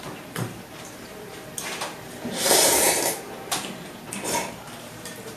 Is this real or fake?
fake